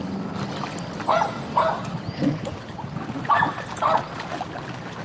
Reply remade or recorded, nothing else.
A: recorded